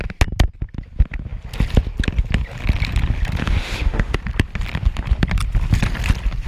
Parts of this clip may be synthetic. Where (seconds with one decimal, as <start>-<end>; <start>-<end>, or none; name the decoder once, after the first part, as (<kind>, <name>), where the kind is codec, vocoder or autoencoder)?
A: 3.4-4.2 (autoencoder, DAC-VAE)